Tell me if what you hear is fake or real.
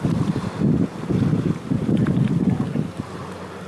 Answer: real